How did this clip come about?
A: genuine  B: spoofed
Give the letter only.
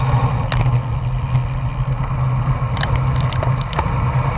A